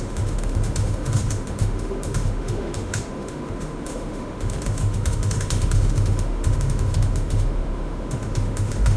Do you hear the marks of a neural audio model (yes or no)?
yes